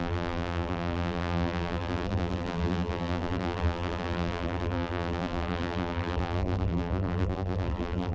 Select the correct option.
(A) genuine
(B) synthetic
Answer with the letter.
B